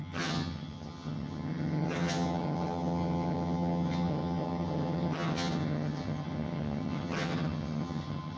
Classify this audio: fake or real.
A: fake